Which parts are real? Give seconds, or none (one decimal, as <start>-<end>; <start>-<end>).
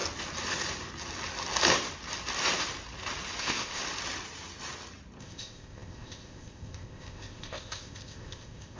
0.0-3.4; 3.8-5.2